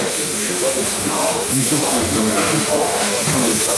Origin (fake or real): fake